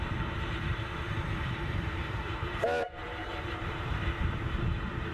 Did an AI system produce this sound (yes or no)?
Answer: yes